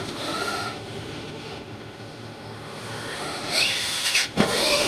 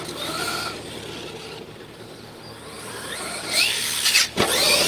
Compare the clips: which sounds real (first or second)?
second